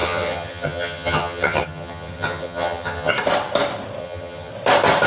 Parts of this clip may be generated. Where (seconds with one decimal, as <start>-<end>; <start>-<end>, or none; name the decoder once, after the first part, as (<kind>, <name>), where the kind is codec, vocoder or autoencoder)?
0.0-3.1 (vocoder, HiFi-GAN); 4.0-4.5